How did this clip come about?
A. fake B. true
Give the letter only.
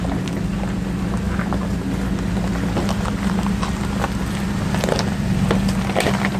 B